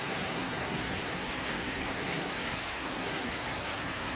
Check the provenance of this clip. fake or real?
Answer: fake